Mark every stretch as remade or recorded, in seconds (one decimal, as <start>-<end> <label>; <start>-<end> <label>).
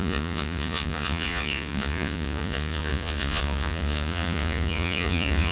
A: 0.0-5.5 remade